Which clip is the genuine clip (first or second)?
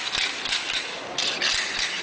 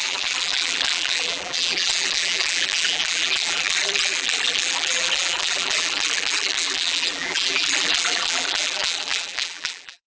first